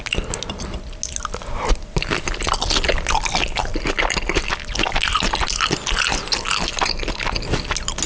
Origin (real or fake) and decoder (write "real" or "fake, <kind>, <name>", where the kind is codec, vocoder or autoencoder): real